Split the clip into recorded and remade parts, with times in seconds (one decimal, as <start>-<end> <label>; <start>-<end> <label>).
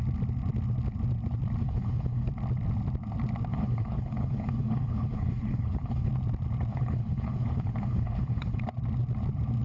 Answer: 0.0-1.6 recorded; 1.6-2.3 remade; 2.3-3.5 recorded; 3.5-6.1 remade; 6.1-6.7 recorded; 6.7-8.6 remade; 8.6-9.6 recorded